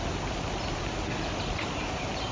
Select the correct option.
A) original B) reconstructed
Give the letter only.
A